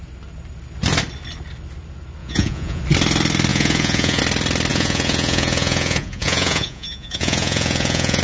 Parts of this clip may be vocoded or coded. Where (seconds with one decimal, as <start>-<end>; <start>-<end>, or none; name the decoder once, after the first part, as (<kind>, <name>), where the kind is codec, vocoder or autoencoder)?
2.2-2.8 (vocoder, Vocos); 3.5-4.2; 4.7-8.2